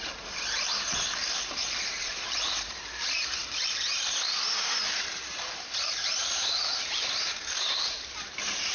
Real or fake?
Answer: fake